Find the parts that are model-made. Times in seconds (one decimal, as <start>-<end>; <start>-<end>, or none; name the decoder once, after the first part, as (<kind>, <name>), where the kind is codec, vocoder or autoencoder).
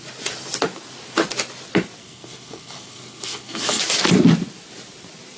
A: 2.0-3.8 (codec, SNAC)